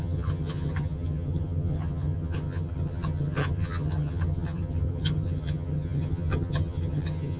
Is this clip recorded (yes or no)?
no